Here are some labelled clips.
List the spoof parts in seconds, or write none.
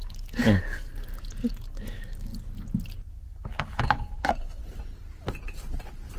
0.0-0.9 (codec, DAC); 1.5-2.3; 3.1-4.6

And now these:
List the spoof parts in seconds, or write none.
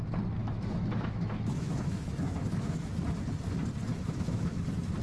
0.4-2.9 (autoencoder, DAC-VAE); 3.9-4.6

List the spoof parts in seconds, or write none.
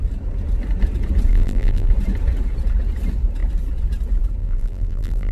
1.3-1.9 (vocoder, BigVGAN v2); 4.4-5.3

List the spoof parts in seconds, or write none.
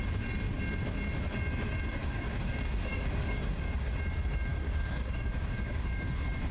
2.0-3.9 (codec, DAC); 4.5-6.1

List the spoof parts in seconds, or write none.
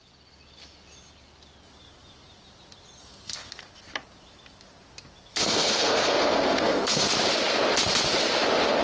3.0-3.5 (codec, SNAC); 5.3-7.1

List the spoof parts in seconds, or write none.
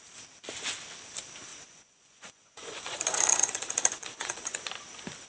1.5-4.7 (vocoder, Vocos)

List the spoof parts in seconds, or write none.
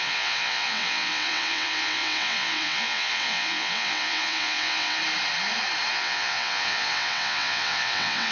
0.0-5.0 (vocoder, WaveNeXt); 5.9-8.3